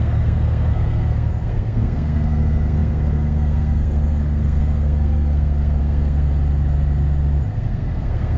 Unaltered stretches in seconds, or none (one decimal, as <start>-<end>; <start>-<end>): 6.3-7.5